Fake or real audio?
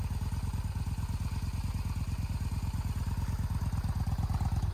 real